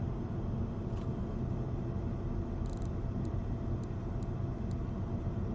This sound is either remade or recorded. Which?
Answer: recorded